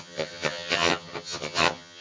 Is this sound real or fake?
fake